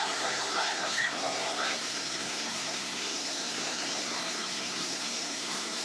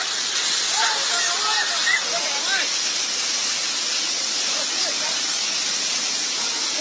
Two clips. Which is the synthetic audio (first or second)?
first